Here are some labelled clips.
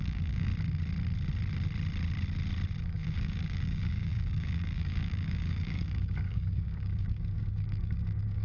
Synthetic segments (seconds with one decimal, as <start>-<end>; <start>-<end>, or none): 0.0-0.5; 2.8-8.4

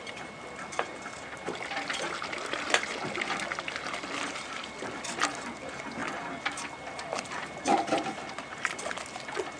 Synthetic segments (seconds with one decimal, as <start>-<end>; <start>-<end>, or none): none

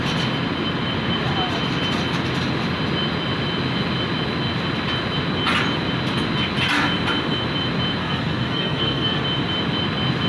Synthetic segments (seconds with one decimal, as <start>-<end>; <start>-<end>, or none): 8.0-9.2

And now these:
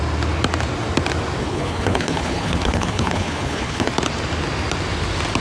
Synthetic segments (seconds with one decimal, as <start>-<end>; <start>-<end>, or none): 1.4-3.9

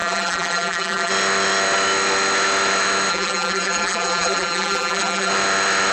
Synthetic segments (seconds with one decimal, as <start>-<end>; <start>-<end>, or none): 0.0-1.1; 3.1-5.3